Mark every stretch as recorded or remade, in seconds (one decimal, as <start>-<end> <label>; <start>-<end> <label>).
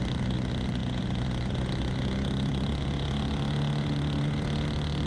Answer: 0.0-5.1 recorded